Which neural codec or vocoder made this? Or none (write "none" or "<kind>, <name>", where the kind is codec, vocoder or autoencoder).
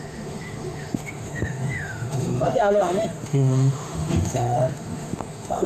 autoencoder, DAC-VAE